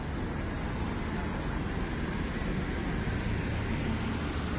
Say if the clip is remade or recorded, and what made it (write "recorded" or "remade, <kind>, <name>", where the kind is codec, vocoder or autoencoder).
recorded